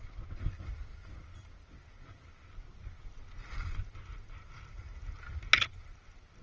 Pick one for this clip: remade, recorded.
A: recorded